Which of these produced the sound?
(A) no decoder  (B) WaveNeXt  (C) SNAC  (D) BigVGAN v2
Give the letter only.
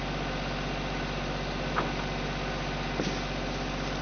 A